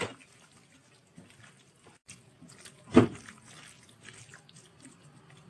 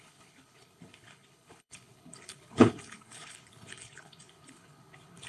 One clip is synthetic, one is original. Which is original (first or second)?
first